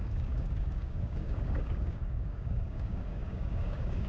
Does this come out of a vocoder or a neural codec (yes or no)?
yes